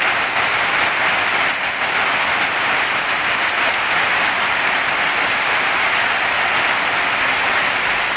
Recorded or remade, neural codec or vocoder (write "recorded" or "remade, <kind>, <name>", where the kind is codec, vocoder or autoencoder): recorded